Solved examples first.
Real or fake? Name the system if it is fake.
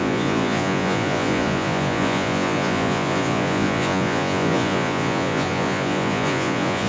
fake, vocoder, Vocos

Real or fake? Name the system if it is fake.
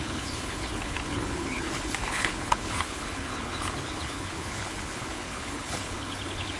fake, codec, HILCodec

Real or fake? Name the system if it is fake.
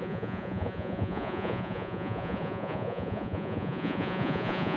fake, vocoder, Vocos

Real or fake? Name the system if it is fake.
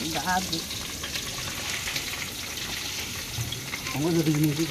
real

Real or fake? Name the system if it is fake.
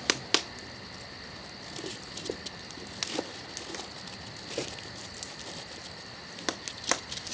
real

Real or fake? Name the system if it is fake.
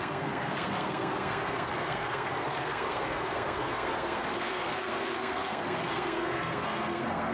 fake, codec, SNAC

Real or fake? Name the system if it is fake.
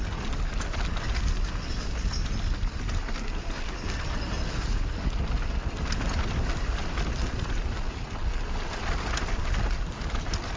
real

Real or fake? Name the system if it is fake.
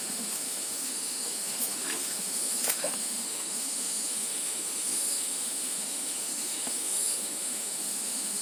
fake, autoencoder, DAC-VAE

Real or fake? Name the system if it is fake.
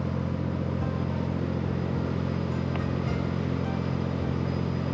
real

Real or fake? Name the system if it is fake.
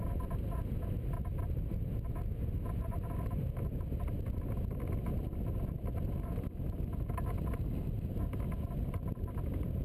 real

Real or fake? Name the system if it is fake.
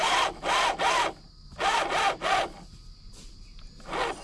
real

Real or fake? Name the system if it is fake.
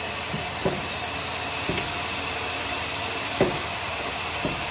real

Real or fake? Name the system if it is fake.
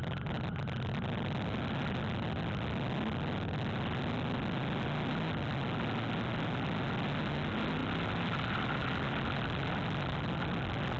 real